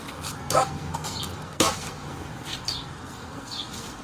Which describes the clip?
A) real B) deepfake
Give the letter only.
B